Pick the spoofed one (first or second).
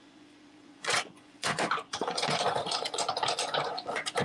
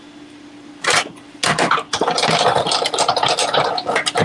first